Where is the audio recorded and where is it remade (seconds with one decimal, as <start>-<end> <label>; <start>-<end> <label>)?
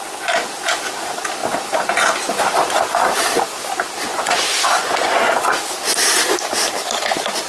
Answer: 0.0-4.1 recorded; 4.1-5.2 remade; 5.2-7.5 recorded